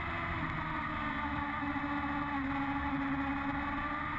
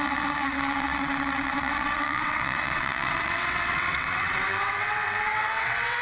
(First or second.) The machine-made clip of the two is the second